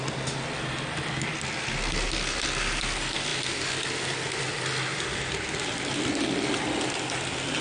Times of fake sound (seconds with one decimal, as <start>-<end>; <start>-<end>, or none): none